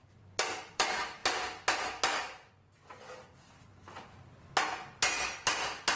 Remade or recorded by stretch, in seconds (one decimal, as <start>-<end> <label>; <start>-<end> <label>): 0.0-1.2 remade; 1.2-2.5 recorded; 2.5-3.7 remade; 3.7-6.0 recorded